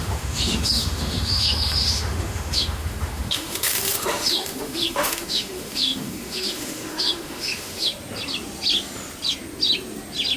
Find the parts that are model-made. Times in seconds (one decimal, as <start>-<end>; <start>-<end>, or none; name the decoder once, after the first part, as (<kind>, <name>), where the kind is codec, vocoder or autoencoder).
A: 0.0-7.9 (autoencoder, DAC-VAE)

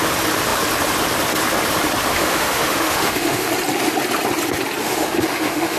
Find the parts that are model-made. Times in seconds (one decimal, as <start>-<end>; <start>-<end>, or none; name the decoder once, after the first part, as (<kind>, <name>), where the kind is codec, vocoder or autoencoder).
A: 2.1-3.5 (autoencoder, DAC-VAE); 4.8-5.8

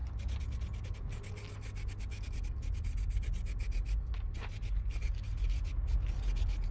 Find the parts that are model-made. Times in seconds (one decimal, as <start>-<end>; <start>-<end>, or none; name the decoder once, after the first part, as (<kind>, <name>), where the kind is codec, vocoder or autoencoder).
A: none

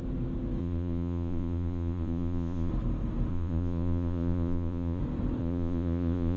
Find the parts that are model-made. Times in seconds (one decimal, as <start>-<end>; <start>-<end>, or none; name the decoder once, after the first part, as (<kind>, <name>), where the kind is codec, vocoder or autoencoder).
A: 0.6-2.7 (vocoder, Vocos); 3.3-5.0; 5.4-6.4